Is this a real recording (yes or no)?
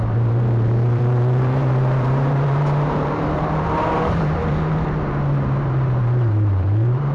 no